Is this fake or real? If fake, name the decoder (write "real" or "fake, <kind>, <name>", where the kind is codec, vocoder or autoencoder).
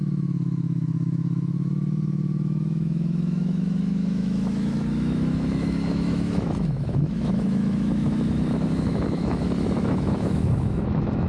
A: fake, autoencoder, DAC-VAE